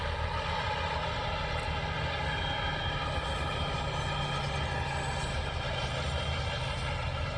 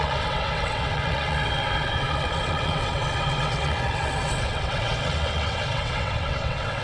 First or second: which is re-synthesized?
second